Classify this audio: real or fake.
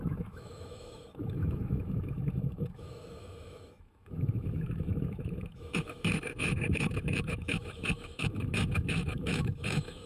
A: fake